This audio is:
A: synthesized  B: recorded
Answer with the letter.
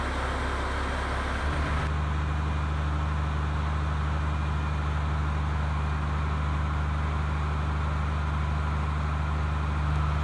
B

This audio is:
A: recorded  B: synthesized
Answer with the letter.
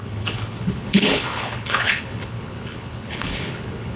B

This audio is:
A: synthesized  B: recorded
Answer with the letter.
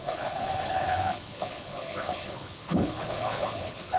A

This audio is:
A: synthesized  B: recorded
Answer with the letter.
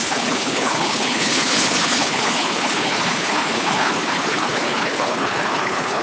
A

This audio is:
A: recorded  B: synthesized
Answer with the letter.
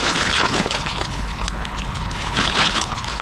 B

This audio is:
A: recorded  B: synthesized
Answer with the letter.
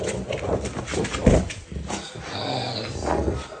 A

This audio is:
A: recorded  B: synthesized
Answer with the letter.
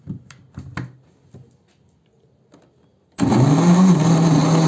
A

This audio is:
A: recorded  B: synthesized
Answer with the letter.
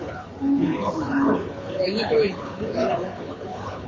B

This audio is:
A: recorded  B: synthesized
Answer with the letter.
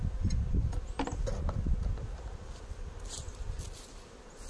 A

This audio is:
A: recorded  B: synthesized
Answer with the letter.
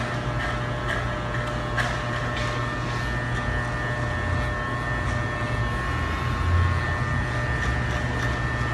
A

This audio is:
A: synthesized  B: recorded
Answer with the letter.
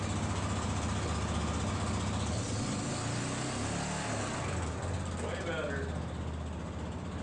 B